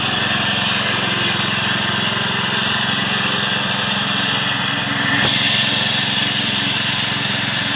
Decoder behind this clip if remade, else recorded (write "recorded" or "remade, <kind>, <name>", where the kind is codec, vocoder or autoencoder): recorded